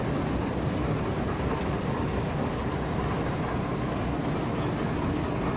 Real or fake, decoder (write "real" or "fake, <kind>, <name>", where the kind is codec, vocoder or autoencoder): real